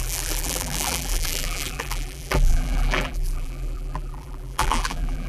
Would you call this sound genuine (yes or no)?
no